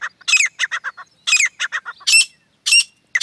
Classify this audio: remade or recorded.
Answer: recorded